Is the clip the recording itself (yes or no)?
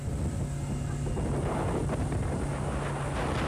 yes